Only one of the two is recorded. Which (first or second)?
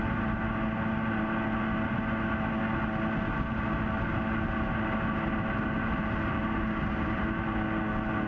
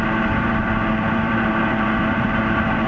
first